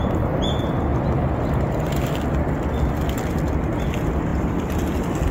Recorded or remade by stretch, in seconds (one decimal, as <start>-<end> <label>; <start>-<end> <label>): 0.0-4.3 recorded; 4.3-4.8 remade; 4.8-5.3 recorded